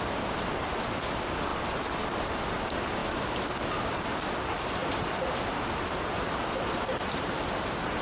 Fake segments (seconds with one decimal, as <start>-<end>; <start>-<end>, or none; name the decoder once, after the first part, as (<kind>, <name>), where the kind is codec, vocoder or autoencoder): none